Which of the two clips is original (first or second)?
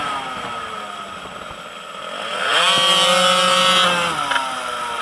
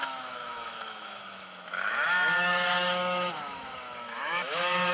first